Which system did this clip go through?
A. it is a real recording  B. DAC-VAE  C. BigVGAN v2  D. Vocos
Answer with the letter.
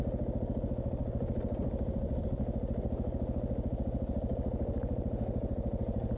A